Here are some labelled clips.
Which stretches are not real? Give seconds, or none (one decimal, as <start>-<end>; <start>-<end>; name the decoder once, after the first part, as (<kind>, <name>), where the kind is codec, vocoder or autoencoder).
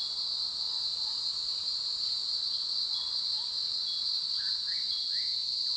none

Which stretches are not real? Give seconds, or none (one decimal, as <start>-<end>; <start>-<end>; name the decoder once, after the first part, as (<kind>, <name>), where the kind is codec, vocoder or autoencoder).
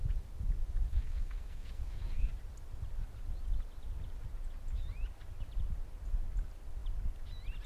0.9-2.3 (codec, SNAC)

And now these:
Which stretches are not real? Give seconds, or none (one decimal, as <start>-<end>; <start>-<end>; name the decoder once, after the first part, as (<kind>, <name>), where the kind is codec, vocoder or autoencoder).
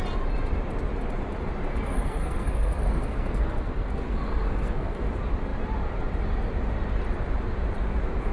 1.7-5.0 (codec, SNAC)